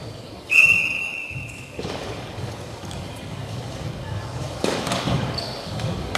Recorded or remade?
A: remade